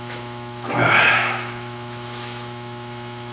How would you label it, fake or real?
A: fake